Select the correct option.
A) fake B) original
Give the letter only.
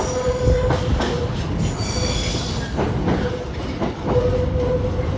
B